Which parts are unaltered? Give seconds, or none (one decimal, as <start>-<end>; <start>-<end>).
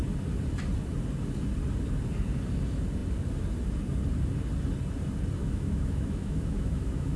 0.0-5.4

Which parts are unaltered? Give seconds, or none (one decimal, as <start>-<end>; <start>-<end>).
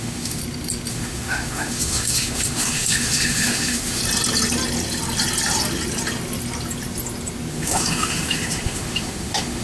0.4-0.9; 4.0-7.5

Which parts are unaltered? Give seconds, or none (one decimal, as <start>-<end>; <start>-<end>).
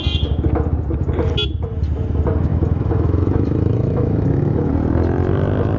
0.0-2.5; 4.7-5.8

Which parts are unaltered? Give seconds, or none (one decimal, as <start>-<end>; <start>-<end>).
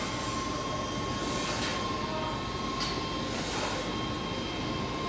0.0-5.1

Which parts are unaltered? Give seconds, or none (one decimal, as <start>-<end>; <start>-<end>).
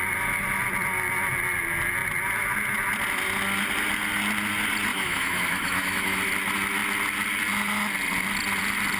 0.0-4.9; 6.2-9.0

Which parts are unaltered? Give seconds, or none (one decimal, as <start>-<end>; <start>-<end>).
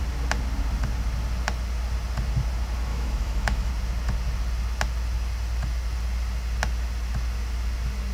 0.0-2.9; 3.7-8.1